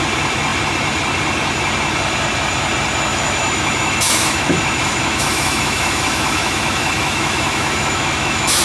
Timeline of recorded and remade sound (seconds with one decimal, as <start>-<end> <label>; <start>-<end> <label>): 0.0-3.1 recorded; 3.1-8.6 remade